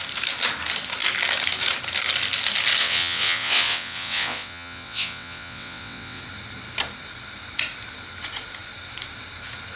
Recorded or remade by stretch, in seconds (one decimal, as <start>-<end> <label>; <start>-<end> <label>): 0.0-2.8 recorded; 2.8-6.2 remade; 6.2-9.8 recorded